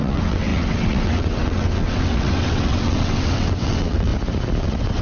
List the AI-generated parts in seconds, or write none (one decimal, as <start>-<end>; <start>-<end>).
0.0-4.1; 4.6-5.0